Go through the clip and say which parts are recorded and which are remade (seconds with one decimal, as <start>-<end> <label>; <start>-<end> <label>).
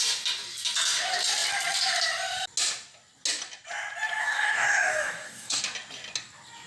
0.0-4.2 recorded; 4.2-5.6 remade; 5.6-6.7 recorded